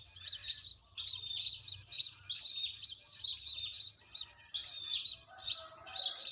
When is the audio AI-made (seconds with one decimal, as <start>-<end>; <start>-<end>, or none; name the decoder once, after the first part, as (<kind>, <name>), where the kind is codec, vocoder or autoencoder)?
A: none